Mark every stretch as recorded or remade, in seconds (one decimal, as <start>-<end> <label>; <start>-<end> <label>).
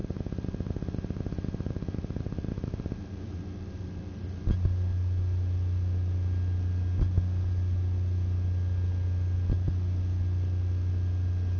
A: 0.0-11.6 recorded